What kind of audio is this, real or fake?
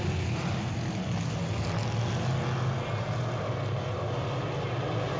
real